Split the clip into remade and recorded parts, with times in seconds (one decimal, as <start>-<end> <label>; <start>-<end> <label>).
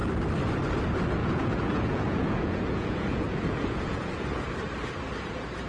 0.0-1.2 recorded; 1.2-4.5 remade; 4.5-5.7 recorded